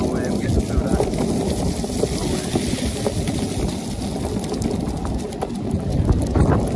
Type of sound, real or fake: real